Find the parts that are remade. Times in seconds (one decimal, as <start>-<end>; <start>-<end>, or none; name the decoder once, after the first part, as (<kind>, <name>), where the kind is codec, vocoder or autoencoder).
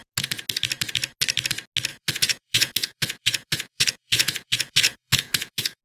1.9-5.8 (vocoder, Vocos)